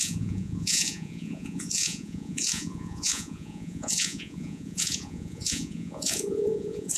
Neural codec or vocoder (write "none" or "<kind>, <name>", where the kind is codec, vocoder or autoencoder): vocoder, Vocos